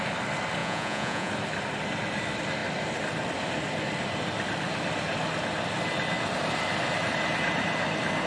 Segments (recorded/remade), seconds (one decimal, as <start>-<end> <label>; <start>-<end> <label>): 0.0-0.6 recorded; 0.6-1.3 remade; 1.3-8.3 recorded